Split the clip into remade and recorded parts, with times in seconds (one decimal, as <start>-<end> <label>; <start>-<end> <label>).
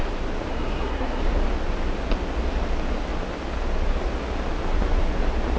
0.0-0.5 recorded; 0.5-1.2 remade; 1.2-5.6 recorded